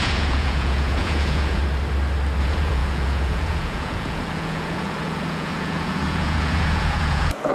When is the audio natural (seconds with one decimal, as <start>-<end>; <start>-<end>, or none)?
1.6-2.4